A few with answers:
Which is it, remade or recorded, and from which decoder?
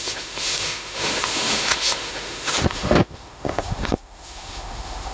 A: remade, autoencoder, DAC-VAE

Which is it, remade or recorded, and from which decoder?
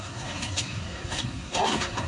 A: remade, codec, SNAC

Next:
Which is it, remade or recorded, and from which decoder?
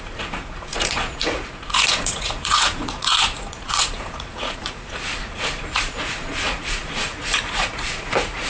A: remade, vocoder, Vocos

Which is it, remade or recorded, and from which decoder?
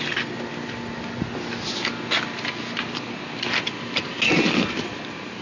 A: recorded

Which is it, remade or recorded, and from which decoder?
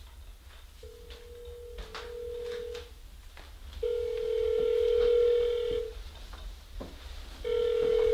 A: recorded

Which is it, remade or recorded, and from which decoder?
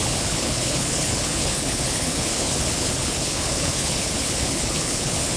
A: remade, codec, HILCodec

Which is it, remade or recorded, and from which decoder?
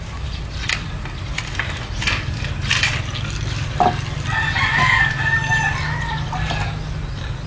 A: recorded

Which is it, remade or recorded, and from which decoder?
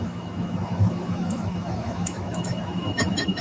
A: remade, autoencoder, DAC-VAE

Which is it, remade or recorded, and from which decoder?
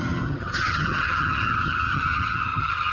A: remade, vocoder, HiFi-GAN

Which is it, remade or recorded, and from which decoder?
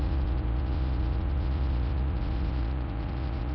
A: remade, vocoder, Vocos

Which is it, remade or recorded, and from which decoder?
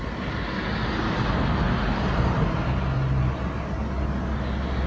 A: recorded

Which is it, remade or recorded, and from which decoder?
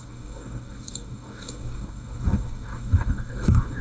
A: remade, codec, DAC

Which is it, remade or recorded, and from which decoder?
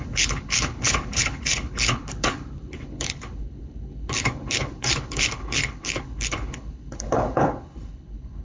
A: remade, codec, HILCodec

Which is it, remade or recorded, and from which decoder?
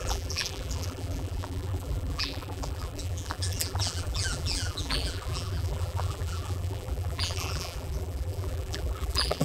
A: remade, vocoder, BigVGAN v2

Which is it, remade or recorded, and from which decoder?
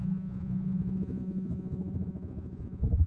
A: remade, vocoder, Vocos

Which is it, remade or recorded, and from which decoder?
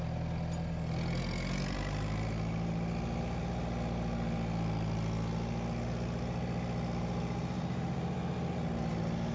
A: recorded